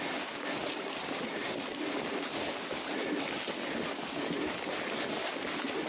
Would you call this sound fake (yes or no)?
no